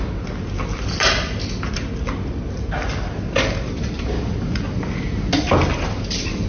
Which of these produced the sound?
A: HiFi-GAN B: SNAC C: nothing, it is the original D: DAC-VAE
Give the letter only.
C